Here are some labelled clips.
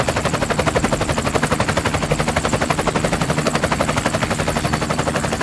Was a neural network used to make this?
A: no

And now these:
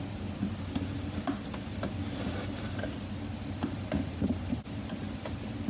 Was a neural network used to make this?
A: no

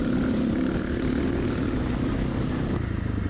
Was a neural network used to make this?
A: no